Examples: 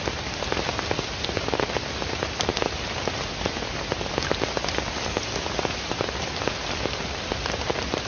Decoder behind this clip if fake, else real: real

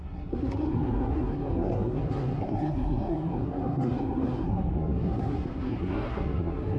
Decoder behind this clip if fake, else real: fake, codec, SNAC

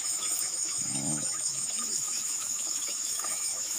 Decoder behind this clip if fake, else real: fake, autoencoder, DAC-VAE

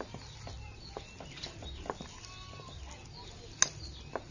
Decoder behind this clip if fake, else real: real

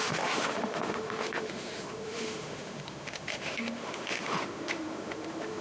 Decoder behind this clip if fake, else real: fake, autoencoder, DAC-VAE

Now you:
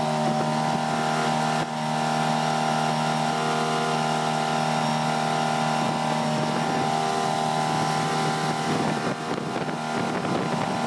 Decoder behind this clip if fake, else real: real